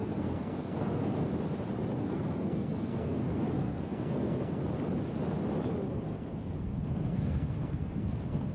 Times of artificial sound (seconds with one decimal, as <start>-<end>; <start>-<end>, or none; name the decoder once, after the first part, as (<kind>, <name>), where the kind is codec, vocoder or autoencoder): 0.0-1.3 (codec, SNAC); 2.0-4.6; 5.9-8.5